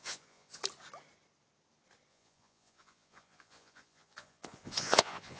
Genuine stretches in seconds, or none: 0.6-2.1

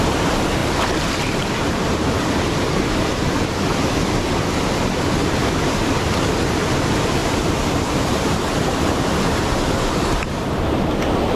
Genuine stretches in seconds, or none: 0.0-0.6; 5.2-7.2; 8.7-11.4

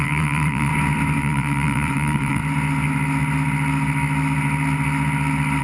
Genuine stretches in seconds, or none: 0.7-1.2; 2.4-5.6

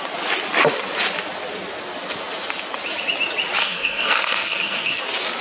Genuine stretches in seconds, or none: 0.0-3.6; 5.0-5.4

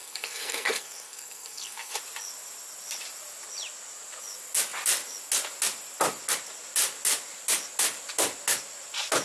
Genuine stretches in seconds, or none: 2.0-9.2

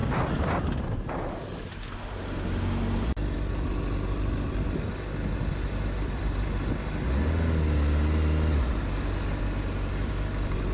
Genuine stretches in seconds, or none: 0.0-10.7